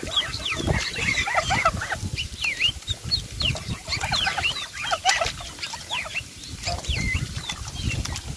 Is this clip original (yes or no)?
no